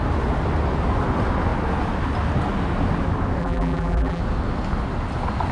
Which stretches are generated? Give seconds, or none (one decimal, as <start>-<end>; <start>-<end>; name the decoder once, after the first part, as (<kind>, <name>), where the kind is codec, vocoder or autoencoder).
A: 3.4-4.2 (vocoder, BigVGAN v2)